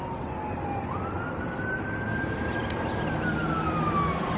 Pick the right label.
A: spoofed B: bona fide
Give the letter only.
B